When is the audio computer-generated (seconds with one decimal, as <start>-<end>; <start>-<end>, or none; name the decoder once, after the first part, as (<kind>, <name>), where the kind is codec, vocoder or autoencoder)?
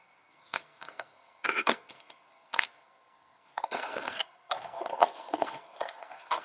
0.0-6.4 (codec, SNAC)